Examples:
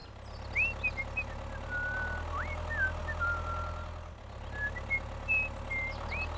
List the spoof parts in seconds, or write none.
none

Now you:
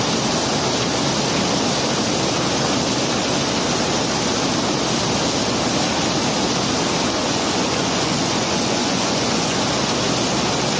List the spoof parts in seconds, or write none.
7.2-9.6 (vocoder, Vocos)

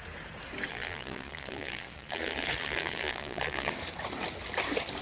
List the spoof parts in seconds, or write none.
0.7-3.7 (vocoder, Vocos)

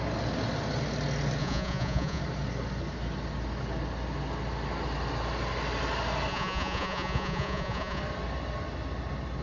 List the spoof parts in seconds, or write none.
1.4-2.2 (vocoder, Vocos); 6.3-8.0

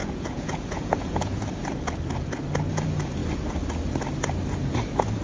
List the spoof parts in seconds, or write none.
0.0-1.4 (vocoder, Vocos)

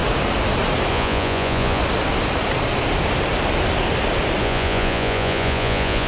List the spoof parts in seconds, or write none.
0.9-1.8 (vocoder, Vocos); 4.4-6.1

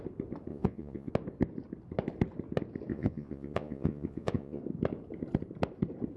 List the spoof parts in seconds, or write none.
0.5-1.1 (vocoder, Vocos); 2.9-4.6

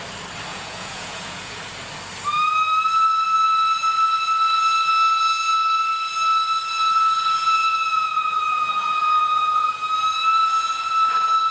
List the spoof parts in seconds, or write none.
0.5-1.6 (vocoder, Vocos); 6.8-9.7; 10.4-11.5